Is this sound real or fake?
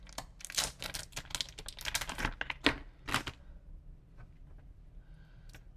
real